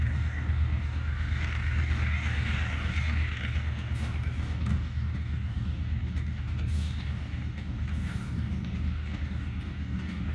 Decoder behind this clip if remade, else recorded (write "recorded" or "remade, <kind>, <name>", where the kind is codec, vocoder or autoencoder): remade, codec, DAC